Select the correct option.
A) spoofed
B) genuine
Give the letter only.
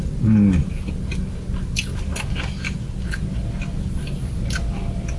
B